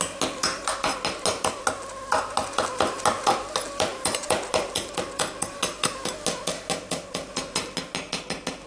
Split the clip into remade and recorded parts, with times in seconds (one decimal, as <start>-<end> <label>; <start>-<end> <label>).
0.0-8.7 recorded